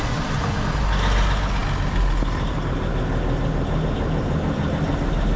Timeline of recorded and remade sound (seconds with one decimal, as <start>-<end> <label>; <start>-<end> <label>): 0.0-5.4 recorded